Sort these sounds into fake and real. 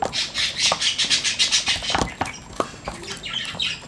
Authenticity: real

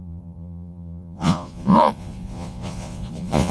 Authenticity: fake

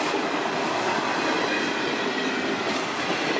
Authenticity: real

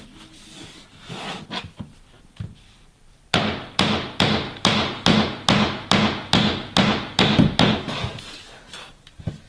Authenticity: real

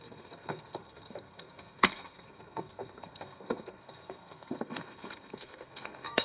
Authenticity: fake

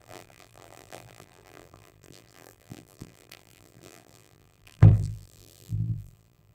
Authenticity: fake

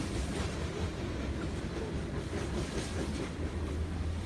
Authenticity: real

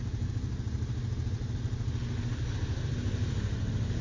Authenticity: real